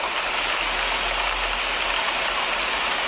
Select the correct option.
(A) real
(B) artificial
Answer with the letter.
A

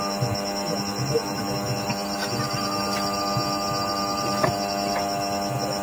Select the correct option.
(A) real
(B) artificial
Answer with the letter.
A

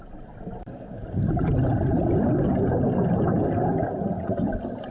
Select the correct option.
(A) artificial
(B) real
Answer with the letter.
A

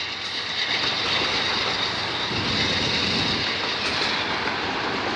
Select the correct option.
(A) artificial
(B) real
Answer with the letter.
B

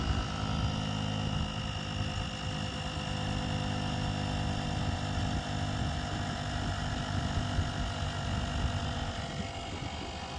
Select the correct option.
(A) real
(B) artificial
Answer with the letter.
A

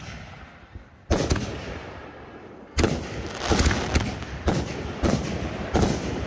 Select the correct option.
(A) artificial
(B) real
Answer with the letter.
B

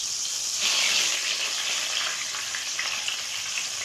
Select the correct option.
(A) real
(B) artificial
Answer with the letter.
A